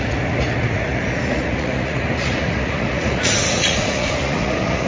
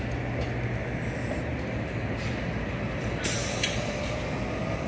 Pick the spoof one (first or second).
first